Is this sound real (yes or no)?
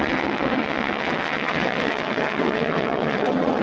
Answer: no